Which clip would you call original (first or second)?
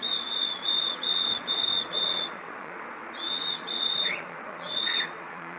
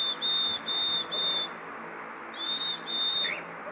second